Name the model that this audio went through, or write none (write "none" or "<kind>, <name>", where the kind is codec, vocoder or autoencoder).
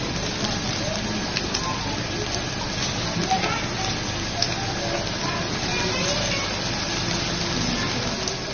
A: none